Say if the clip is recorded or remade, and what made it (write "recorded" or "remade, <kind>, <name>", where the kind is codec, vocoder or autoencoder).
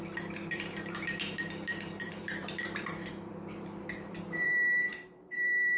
remade, vocoder, BigVGAN v2